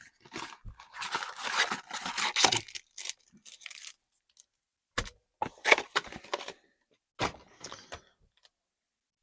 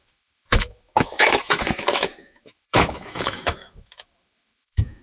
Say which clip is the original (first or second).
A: first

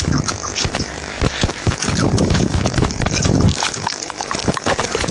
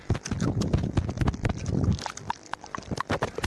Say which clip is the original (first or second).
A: second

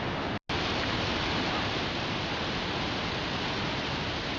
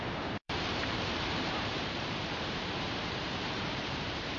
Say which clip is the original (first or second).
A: first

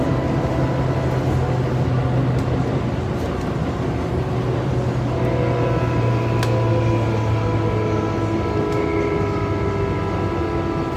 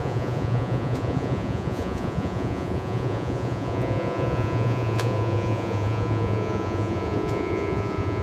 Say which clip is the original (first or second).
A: first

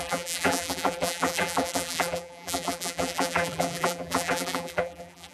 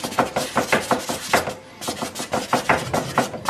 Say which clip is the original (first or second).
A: second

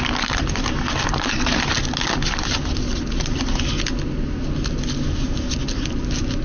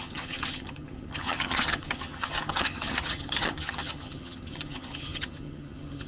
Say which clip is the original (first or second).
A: first